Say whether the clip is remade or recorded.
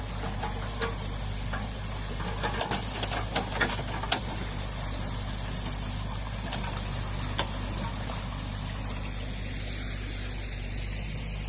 recorded